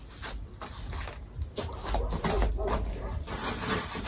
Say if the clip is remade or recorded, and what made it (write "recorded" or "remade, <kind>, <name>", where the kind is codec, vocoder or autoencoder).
recorded